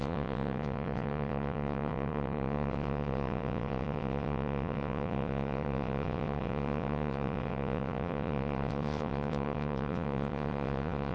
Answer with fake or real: fake